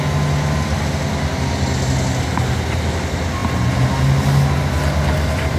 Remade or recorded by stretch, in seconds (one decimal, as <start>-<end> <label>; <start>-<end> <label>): 0.0-5.6 recorded